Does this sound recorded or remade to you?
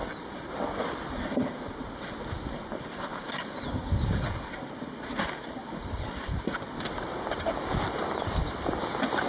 recorded